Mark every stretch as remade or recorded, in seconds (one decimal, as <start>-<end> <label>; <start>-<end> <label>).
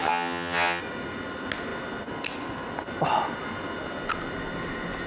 0.0-0.8 remade; 0.8-5.1 recorded